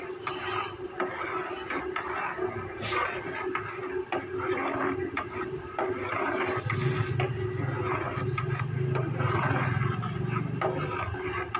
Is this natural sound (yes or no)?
yes